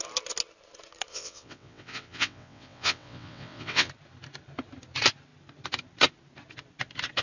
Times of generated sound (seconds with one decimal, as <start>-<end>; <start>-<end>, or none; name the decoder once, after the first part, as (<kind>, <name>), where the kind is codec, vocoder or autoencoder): 1.1-3.9 (vocoder, WaveNeXt)